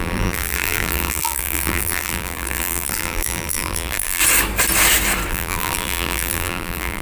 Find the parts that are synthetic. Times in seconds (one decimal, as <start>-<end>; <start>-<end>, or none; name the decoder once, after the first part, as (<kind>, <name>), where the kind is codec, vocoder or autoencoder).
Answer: 0.0-4.2 (vocoder, BigVGAN v2); 5.3-7.0